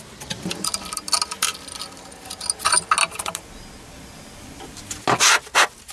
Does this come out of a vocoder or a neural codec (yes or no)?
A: no